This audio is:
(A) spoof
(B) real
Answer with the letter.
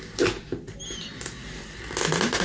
B